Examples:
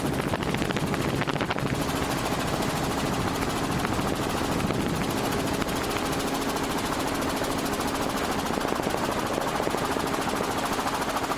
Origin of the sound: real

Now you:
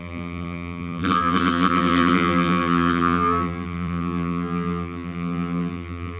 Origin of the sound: fake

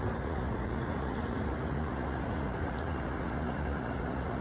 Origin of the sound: fake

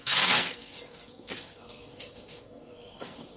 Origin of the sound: fake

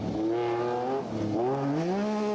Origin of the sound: real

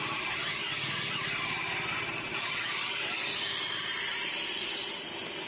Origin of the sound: real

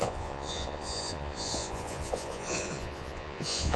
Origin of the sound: fake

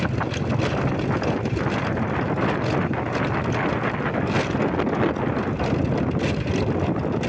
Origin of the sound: real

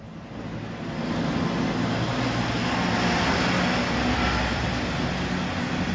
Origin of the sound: real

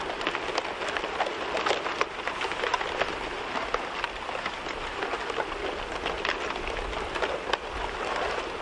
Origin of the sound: real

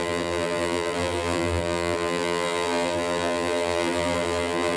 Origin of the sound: fake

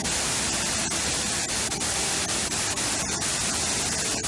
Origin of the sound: real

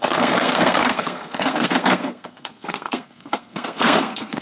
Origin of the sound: fake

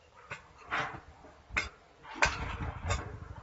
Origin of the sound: real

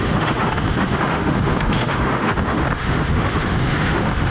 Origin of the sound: fake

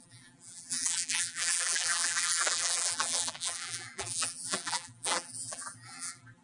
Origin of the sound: fake